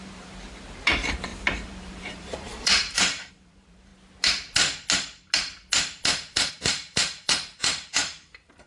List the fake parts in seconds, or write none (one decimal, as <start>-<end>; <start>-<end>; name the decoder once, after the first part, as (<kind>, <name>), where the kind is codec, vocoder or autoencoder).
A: 0.0-3.9 (vocoder, BigVGAN v2); 6.5-8.7